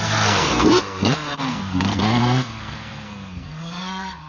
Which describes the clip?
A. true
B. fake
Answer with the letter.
B